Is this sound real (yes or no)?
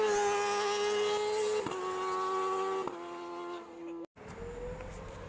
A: yes